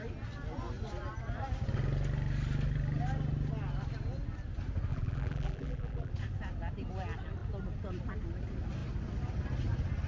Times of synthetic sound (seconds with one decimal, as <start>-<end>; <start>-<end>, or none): 4.9-6.1